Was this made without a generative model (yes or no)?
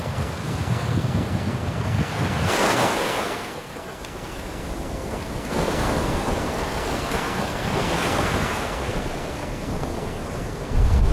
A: no